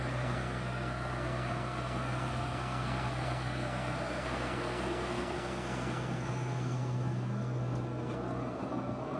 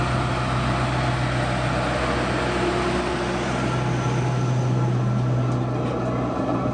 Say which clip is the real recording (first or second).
second